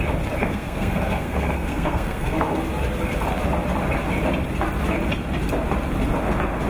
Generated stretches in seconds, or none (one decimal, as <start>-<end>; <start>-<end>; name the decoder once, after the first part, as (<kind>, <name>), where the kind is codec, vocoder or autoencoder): 0.4-2.6 (codec, SNAC)